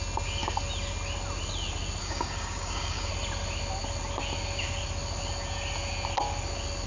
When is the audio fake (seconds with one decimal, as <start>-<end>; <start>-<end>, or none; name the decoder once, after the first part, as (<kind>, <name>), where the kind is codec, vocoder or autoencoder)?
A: 2.0-3.1 (codec, DAC)